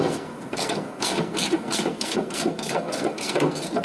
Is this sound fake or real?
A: fake